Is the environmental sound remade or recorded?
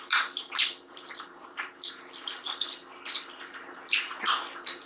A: remade